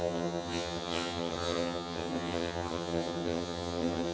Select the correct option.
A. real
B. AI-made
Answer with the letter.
B